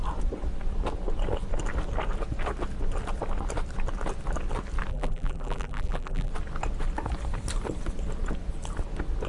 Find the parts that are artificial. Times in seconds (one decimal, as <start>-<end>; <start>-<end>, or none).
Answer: 4.9-6.3